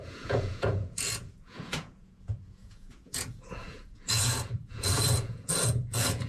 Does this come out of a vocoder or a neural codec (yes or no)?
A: yes